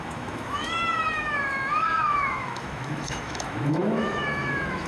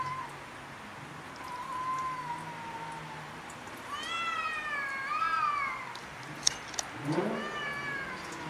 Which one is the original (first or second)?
second